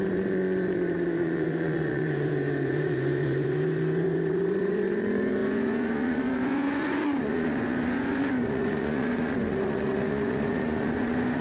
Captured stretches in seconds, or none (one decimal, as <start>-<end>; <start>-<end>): none